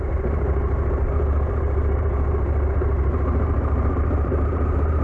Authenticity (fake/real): fake